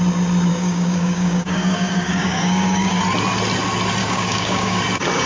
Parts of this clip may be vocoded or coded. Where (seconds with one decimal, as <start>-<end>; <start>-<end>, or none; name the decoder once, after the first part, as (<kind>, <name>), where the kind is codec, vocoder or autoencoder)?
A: 0.5-3.0 (codec, DAC); 4.0-4.8